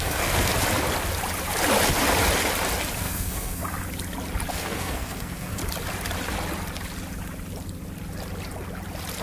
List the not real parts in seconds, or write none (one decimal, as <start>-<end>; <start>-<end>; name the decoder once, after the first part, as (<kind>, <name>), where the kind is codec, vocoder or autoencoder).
0.0-0.5 (codec, SNAC); 3.0-3.6; 4.5-5.6